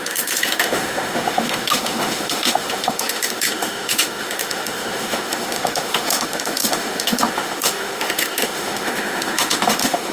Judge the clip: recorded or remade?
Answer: remade